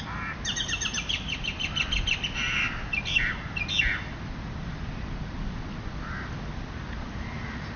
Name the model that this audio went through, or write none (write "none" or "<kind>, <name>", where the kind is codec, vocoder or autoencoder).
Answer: none